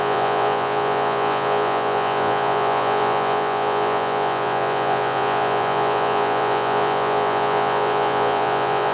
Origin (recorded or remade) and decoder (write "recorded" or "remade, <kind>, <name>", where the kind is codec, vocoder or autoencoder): remade, vocoder, Vocos